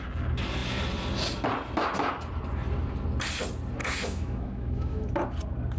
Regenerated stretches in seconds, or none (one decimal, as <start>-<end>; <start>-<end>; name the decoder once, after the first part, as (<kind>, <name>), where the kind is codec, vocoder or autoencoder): 3.8-5.1 (autoencoder, DAC-VAE)